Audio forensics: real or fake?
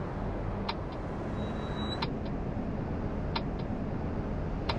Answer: real